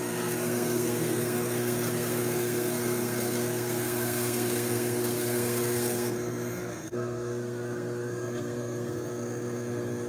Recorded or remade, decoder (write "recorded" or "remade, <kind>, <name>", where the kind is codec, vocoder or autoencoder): remade, codec, SNAC